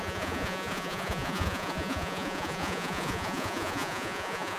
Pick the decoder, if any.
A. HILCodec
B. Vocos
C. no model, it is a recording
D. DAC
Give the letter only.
B